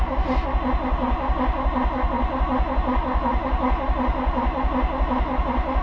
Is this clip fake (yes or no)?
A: no